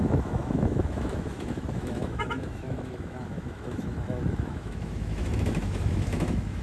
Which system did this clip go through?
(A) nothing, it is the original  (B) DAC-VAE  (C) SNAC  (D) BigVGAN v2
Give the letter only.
B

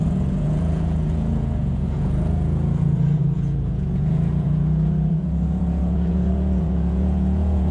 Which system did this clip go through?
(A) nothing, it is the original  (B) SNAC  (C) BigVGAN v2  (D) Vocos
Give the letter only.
D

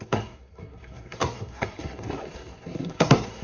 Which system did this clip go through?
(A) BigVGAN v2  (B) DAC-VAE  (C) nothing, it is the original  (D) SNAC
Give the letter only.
D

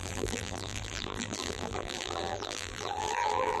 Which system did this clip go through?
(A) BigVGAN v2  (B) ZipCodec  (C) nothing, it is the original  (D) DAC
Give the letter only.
A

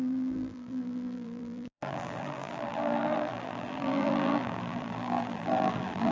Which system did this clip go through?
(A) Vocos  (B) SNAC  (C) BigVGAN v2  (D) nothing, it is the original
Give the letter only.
C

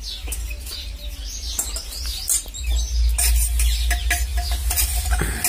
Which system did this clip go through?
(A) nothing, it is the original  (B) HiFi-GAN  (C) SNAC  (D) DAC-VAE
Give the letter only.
A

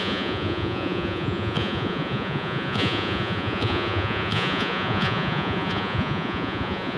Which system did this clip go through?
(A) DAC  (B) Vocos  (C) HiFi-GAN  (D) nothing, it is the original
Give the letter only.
B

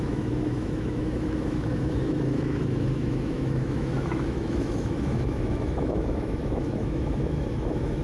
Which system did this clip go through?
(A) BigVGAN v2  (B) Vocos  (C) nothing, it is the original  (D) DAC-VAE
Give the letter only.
D